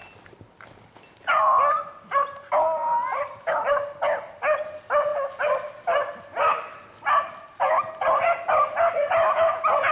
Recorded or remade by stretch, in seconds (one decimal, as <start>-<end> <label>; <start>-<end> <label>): 0.0-9.9 recorded